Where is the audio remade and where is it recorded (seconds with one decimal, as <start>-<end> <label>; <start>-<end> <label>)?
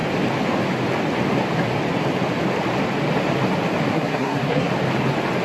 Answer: 0.0-3.9 recorded; 3.9-4.7 remade; 4.7-5.4 recorded